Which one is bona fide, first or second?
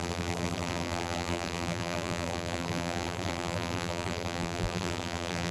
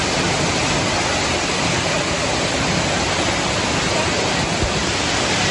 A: second